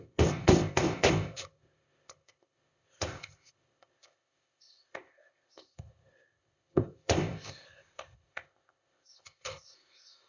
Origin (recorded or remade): remade